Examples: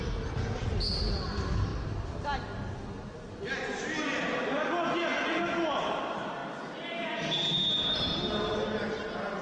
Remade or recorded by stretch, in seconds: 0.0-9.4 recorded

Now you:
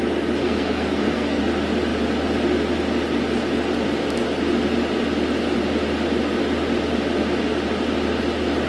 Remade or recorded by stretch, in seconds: 0.0-0.4 recorded; 0.4-1.4 remade; 1.4-8.7 recorded

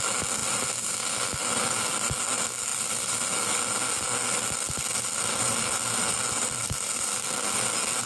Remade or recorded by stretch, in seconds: 0.0-8.1 recorded

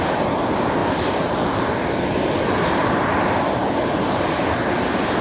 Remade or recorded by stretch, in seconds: 0.0-5.2 recorded

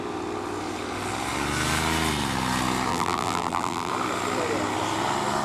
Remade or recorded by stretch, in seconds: 0.0-2.9 recorded; 2.9-3.9 remade; 3.9-5.4 recorded

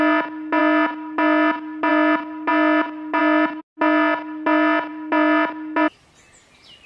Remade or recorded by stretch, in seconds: 0.0-6.9 recorded